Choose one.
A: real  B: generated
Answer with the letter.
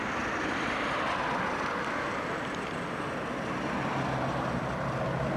A